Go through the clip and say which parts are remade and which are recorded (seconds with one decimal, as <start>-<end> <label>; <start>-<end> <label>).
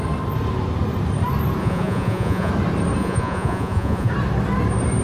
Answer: 0.0-1.6 recorded; 1.6-2.5 remade; 2.5-3.0 recorded; 3.0-4.1 remade; 4.1-5.0 recorded